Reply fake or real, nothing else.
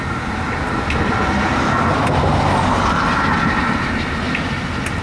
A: real